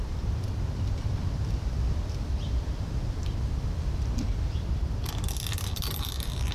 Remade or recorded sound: remade